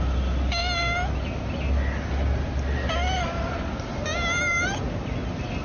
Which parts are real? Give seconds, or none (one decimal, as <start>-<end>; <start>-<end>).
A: 0.0-5.6